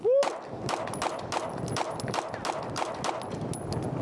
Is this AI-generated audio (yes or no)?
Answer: no